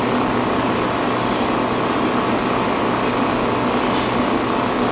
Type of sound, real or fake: real